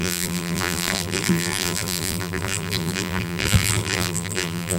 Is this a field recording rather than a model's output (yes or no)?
no